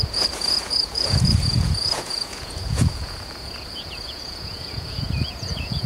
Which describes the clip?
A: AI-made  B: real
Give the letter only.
A